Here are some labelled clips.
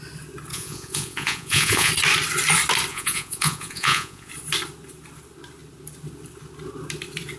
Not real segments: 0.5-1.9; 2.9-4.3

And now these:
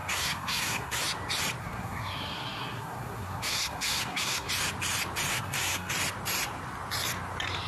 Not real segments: 0.0-1.0; 1.6-4.5; 5.3-5.9

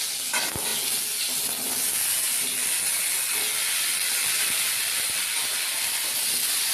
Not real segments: none